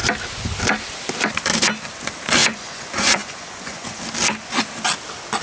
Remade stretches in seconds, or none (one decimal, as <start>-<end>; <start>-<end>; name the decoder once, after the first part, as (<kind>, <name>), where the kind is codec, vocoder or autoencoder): 2.4-4.0 (vocoder, Vocos)